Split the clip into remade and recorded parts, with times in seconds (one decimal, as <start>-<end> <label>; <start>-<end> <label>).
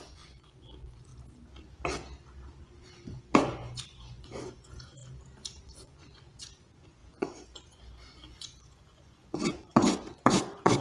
0.0-1.1 remade; 1.1-2.6 recorded; 2.6-5.0 remade; 5.0-5.6 recorded; 5.6-10.8 remade